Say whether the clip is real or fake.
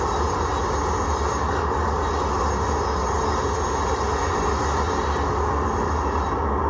real